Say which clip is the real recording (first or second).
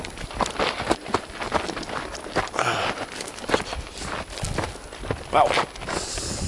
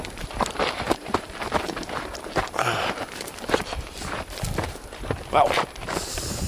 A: first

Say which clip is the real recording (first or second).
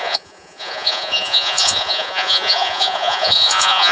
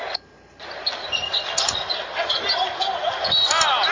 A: second